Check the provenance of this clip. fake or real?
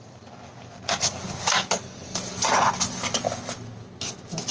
real